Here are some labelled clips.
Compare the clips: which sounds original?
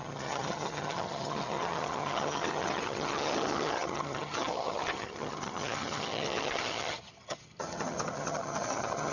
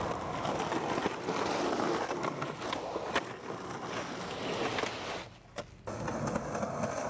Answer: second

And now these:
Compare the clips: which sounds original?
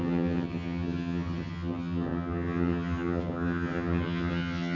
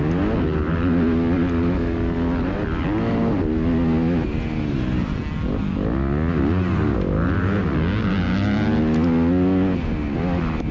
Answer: second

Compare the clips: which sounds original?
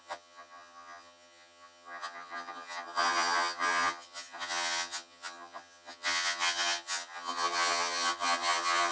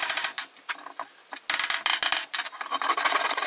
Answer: second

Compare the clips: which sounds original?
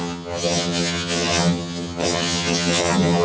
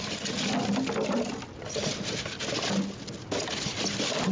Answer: second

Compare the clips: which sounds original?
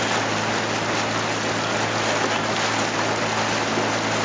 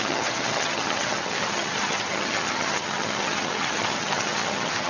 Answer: first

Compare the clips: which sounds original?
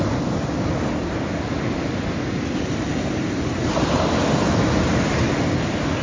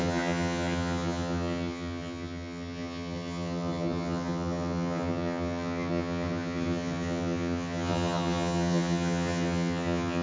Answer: first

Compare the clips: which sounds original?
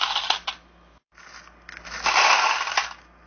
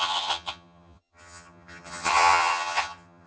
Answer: first